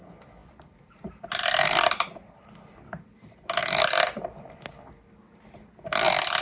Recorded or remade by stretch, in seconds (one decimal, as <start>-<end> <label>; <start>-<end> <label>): 0.0-6.4 recorded